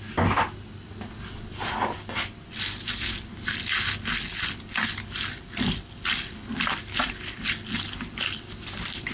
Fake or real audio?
real